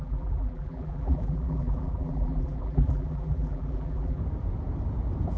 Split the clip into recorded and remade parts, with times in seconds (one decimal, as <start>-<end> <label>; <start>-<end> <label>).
0.0-4.2 remade; 4.2-5.4 recorded